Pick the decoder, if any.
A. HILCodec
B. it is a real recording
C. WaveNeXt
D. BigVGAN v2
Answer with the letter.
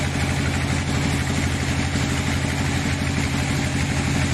B